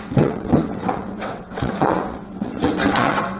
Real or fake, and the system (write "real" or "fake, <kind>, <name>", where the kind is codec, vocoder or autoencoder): fake, vocoder, WaveNeXt